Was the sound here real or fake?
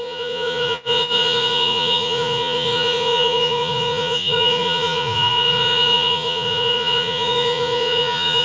fake